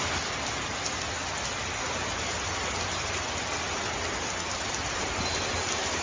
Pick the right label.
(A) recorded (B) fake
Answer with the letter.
A